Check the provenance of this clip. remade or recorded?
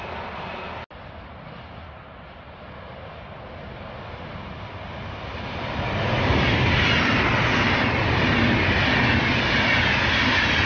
recorded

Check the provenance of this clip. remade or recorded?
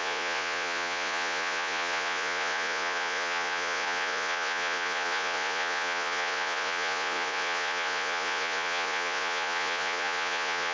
remade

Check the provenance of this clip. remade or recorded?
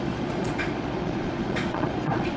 remade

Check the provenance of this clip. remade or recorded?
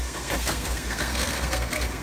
remade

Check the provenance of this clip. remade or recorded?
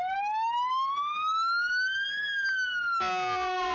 recorded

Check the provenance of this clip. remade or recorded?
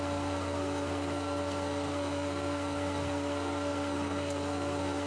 remade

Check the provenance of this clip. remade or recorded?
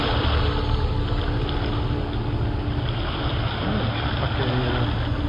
recorded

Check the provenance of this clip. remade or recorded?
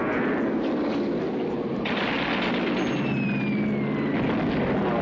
recorded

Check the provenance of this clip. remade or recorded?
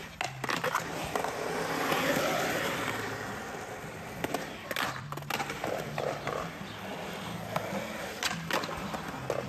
recorded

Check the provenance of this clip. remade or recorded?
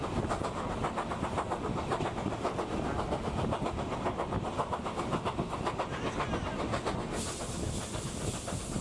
recorded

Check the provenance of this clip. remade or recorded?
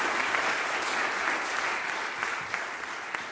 recorded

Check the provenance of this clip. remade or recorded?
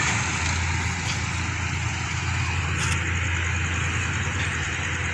recorded